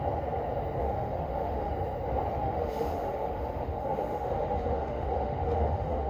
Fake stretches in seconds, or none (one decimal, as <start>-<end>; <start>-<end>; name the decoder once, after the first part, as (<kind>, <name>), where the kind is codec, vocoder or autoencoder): 0.8-1.7 (autoencoder, DAC-VAE); 2.3-6.1